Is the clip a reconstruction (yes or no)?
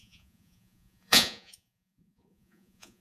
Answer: yes